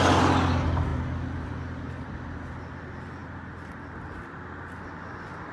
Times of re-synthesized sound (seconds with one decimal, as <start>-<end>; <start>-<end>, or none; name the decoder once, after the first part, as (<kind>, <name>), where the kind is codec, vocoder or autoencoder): none